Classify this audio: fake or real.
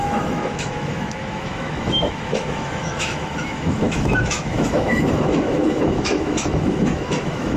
fake